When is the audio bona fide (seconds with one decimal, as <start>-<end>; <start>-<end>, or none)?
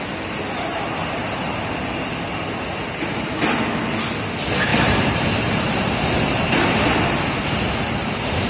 0.0-1.0; 2.1-4.7; 6.8-8.5